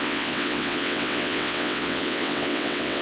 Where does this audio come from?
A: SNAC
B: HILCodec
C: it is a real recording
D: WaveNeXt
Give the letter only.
D